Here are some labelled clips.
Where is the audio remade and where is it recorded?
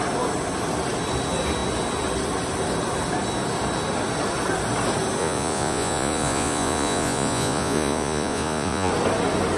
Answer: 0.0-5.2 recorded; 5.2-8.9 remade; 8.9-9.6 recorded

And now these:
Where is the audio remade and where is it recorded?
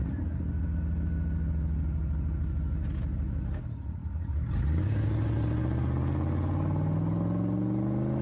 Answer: 0.0-8.2 recorded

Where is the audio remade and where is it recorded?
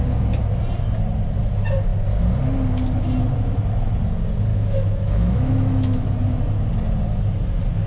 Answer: 0.0-4.5 recorded; 4.5-6.1 remade; 6.1-7.9 recorded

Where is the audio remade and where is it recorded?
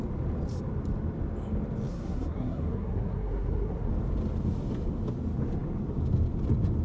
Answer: 0.0-1.9 recorded; 1.9-3.9 remade; 3.9-6.8 recorded